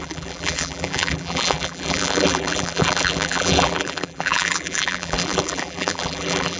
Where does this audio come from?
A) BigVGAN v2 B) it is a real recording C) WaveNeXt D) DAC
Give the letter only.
A